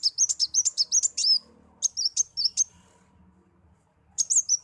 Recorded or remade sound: recorded